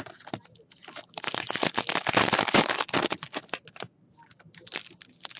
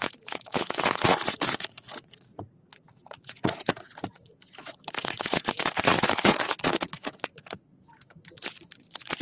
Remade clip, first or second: second